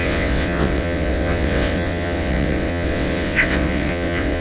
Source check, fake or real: fake